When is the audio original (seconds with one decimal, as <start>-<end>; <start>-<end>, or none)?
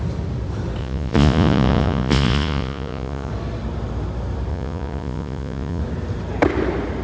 0.0-0.8; 3.3-4.5; 5.8-7.0